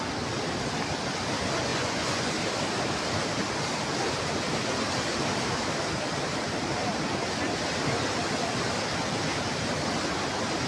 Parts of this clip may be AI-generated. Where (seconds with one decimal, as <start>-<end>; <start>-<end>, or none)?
1.7-2.3